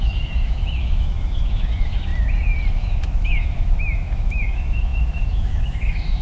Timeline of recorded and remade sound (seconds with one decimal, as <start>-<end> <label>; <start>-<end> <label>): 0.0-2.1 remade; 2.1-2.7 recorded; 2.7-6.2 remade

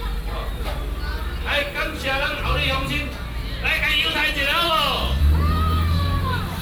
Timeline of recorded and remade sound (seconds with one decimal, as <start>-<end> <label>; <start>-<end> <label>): 0.0-6.6 recorded

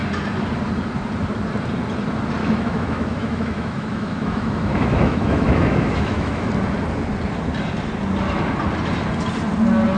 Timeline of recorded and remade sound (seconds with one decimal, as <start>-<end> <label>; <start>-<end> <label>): 0.0-2.4 recorded; 2.4-6.5 remade; 6.5-10.0 recorded

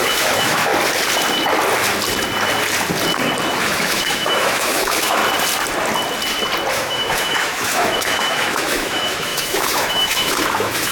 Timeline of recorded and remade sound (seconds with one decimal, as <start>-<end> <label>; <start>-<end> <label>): 0.0-0.7 remade; 0.7-3.6 recorded; 3.6-5.2 remade; 5.2-6.7 recorded; 6.7-10.9 remade

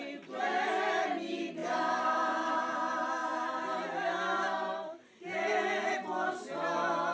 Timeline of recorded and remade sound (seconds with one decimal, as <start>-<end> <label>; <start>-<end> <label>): 0.0-7.1 recorded

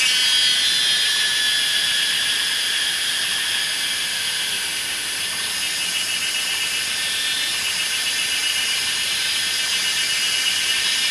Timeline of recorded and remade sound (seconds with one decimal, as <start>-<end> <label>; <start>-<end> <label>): 0.0-3.6 recorded; 3.6-5.2 remade; 5.2-11.1 recorded

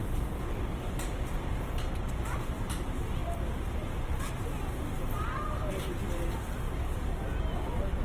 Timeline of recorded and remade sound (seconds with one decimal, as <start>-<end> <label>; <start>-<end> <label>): 0.0-8.0 recorded

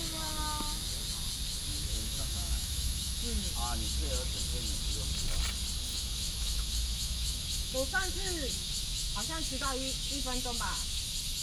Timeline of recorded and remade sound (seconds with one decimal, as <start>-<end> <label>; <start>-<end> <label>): 0.0-1.7 recorded; 1.7-3.5 remade; 3.5-5.9 recorded; 5.9-11.0 remade; 11.0-11.4 recorded